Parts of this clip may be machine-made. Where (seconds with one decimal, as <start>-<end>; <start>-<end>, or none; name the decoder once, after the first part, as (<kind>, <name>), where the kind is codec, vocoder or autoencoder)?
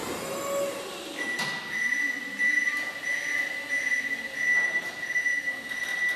none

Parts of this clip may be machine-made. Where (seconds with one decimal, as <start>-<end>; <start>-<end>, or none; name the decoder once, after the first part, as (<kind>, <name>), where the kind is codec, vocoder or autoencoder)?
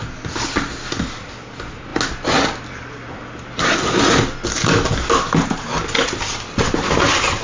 none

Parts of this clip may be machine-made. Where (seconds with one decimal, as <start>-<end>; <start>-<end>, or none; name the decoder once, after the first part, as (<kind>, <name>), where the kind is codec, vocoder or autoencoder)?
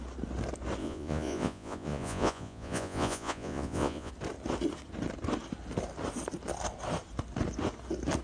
0.8-4.1 (vocoder, Vocos)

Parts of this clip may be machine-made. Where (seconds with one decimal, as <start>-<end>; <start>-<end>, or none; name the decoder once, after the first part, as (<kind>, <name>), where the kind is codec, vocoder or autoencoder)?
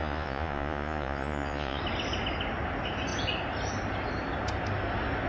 0.0-1.8 (vocoder, Vocos)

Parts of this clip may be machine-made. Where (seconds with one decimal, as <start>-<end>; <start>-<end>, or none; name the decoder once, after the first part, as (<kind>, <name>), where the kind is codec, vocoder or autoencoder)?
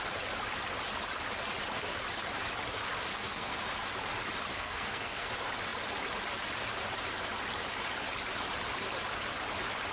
3.1-3.6 (codec, SNAC); 4.5-5.3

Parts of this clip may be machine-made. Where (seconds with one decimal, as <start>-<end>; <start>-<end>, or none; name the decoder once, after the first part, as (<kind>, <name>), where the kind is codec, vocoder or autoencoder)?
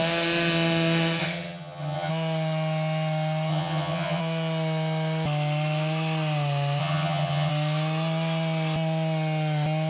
1.2-2.1 (vocoder, HiFi-GAN); 3.5-4.2; 6.8-7.5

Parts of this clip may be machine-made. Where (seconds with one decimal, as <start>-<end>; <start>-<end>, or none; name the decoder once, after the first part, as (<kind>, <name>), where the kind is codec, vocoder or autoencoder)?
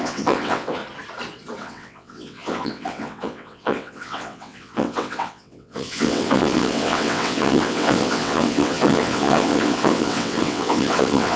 0.0-0.8 (vocoder, WaveNeXt); 1.6-11.4